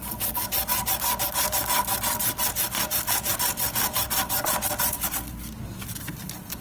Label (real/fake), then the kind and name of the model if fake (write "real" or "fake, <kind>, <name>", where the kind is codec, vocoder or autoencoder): real